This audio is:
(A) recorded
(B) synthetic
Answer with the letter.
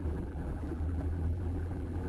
B